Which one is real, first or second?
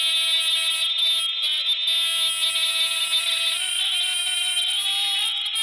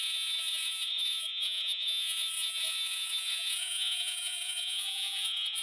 first